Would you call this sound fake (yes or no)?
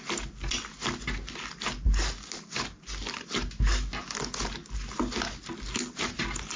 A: no